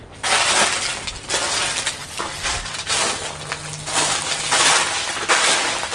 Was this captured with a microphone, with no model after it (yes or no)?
yes